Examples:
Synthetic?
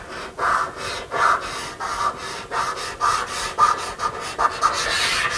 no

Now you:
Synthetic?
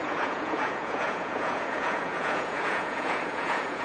yes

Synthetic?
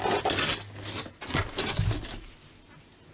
no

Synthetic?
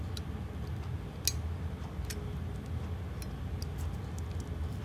no